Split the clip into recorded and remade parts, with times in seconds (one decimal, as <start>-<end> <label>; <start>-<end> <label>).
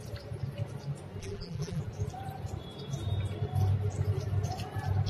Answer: 0.0-1.2 recorded; 1.2-1.8 remade; 1.8-5.1 recorded